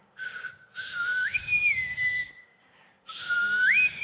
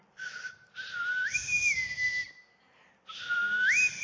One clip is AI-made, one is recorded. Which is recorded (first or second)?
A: second